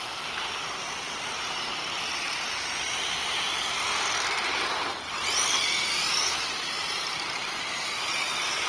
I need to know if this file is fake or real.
fake